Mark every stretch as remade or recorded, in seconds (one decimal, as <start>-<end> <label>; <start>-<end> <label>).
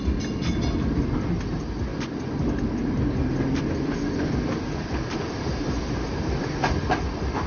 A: 0.0-7.5 recorded